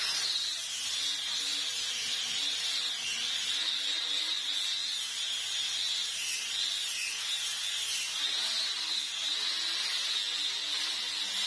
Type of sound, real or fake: real